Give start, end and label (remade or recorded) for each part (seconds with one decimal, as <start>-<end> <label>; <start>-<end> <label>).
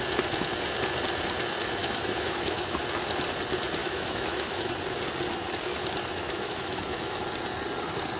0.0-1.8 recorded; 1.8-2.8 remade; 2.8-3.8 recorded; 3.8-4.7 remade; 4.7-6.2 recorded; 6.2-7.2 remade; 7.2-8.2 recorded